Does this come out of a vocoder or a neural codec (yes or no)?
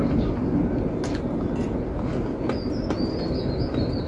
no